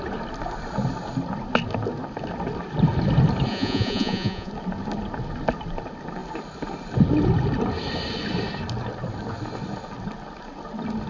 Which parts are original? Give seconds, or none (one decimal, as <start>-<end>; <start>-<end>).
0.0-3.5; 4.5-11.1